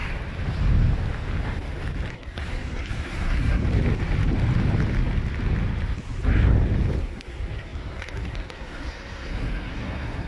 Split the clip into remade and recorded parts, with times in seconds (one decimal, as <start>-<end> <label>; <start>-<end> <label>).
0.0-2.1 recorded; 2.1-3.6 remade; 3.6-7.0 recorded; 7.0-10.3 remade